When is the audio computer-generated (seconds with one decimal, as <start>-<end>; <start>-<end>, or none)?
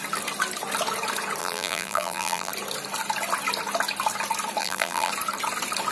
1.4-2.5; 4.6-5.1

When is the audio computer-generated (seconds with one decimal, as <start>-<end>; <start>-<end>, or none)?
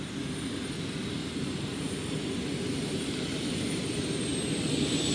1.2-3.8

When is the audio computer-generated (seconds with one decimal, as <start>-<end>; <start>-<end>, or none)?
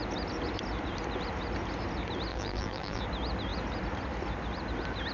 2.3-3.0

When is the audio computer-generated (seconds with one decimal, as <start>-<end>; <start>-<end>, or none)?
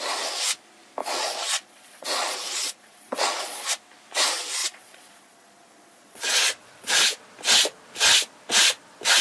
1.0-3.7; 4.6-6.9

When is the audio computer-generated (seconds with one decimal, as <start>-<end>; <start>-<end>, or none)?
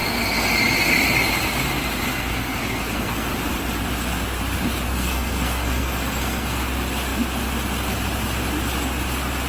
2.1-3.3; 4.9-6.6